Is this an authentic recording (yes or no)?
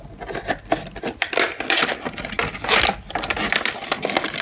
yes